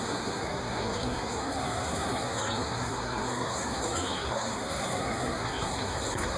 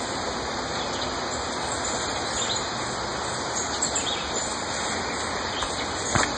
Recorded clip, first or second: second